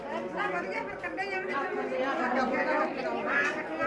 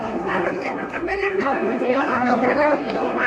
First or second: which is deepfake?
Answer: second